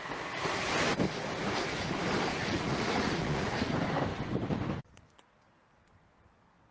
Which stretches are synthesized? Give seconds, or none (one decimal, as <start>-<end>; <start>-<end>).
2.3-3.6